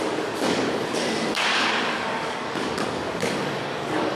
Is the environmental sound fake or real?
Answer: fake